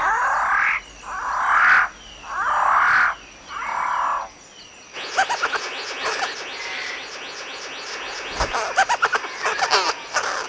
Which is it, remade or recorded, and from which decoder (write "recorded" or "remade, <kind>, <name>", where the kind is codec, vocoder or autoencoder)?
recorded